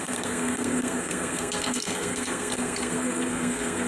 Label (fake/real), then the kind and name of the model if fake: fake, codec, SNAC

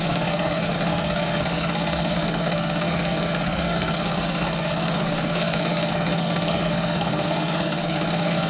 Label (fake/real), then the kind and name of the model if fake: fake, codec, SNAC